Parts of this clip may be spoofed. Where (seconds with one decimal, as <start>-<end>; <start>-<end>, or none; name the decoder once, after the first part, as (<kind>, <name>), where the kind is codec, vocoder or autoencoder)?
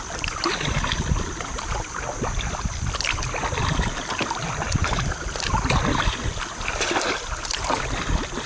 none